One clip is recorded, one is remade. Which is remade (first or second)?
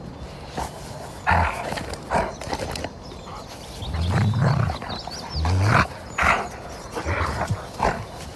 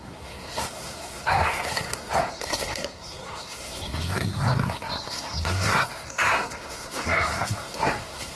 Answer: second